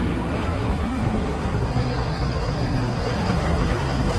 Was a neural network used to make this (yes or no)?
yes